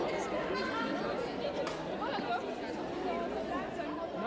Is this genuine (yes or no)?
yes